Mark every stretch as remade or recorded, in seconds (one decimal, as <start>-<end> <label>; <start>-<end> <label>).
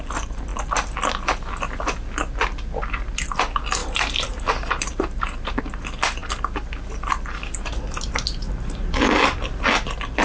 0.0-3.8 recorded; 3.8-5.6 remade; 5.6-8.4 recorded; 8.4-8.9 remade; 8.9-10.2 recorded